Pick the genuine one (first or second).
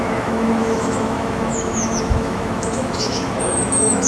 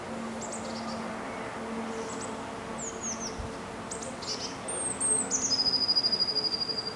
second